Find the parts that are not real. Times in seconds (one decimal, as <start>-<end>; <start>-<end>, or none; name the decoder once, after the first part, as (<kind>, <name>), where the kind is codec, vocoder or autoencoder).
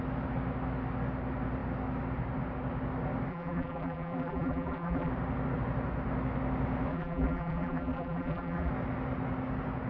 3.3-5.1 (vocoder, BigVGAN v2); 6.9-8.7